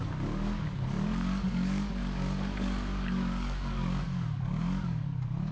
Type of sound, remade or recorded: remade